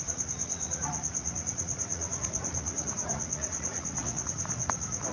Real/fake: fake